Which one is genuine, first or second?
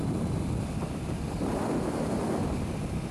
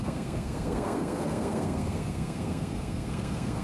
first